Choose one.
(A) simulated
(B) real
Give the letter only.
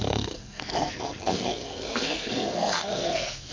A